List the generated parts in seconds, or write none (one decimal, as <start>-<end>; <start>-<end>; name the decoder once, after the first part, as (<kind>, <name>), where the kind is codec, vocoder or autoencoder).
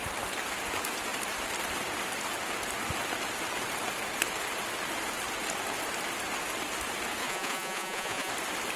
7.2-8.3 (vocoder, Vocos)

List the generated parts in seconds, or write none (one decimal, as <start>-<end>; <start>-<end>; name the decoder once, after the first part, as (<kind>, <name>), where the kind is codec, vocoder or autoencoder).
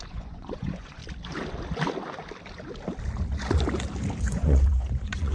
0.0-1.0 (vocoder, Vocos); 4.2-5.3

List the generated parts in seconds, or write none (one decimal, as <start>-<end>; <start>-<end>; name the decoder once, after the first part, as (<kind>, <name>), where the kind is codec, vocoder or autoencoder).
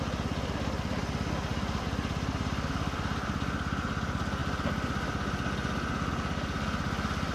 none